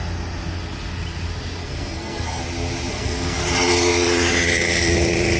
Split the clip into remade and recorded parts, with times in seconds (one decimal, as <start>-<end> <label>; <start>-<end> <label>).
0.0-1.6 recorded; 1.6-2.4 remade; 2.4-2.9 recorded; 2.9-3.4 remade; 3.4-5.4 recorded